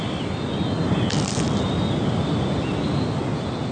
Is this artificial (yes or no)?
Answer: no